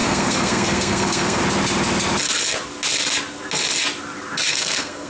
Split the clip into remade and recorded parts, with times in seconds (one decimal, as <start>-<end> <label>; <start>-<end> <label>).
0.0-1.4 remade; 1.4-4.5 recorded; 4.5-5.1 remade

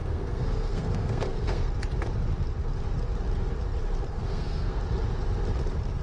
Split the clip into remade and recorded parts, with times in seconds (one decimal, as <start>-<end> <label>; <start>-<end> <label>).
0.0-1.7 remade; 1.7-4.1 recorded; 4.1-4.8 remade; 4.8-6.0 recorded

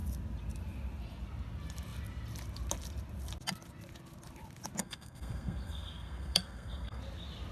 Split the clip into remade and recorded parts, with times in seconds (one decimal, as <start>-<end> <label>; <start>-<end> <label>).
0.0-4.8 recorded; 4.8-7.0 remade; 7.0-7.5 recorded

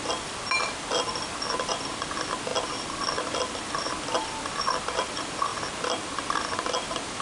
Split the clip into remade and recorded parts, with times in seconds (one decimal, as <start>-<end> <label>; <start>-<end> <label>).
0.0-7.2 recorded

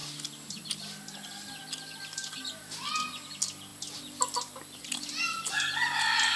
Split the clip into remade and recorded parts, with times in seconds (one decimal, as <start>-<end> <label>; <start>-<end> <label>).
0.0-6.4 recorded

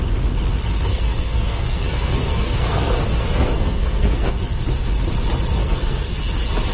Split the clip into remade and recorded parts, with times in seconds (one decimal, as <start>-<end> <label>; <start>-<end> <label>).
0.0-0.9 recorded; 0.9-4.3 remade; 4.3-5.6 recorded; 5.6-6.1 remade; 6.1-6.7 recorded

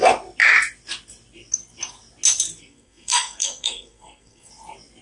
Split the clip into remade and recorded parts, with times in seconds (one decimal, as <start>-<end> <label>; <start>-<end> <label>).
0.0-2.6 recorded; 2.6-4.5 remade; 4.5-5.0 recorded